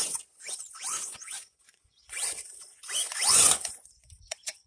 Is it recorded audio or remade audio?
remade